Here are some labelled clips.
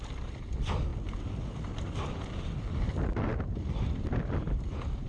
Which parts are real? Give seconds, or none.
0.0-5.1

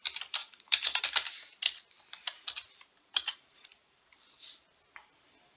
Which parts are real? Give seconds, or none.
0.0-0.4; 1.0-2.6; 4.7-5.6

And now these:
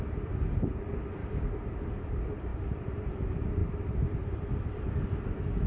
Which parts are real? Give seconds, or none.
0.0-1.2; 1.8-2.5; 3.1-3.6; 4.8-5.7

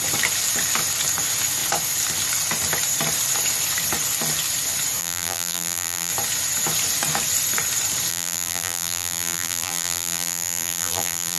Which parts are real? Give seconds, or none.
0.0-5.0; 6.1-8.1

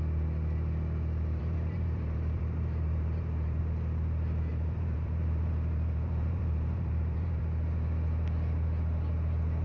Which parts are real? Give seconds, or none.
0.0-1.4; 3.6-4.5; 7.4-9.6

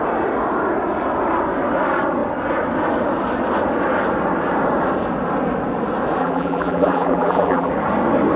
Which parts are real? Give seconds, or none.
0.0-6.2; 7.7-8.4

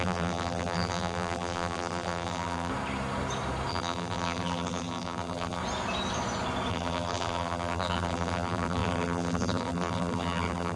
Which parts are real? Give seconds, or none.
2.7-3.7; 5.6-6.7

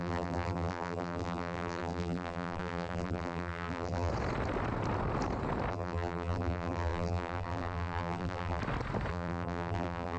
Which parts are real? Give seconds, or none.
4.1-5.7; 8.6-9.1